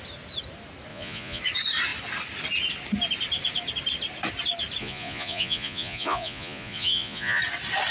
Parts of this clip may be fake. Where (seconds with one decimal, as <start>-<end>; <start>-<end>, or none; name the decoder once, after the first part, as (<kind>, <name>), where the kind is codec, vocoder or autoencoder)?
0.9-1.4 (vocoder, Vocos); 4.8-7.4